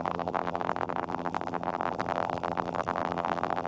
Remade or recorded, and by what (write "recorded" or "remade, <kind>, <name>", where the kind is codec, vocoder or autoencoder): remade, vocoder, BigVGAN v2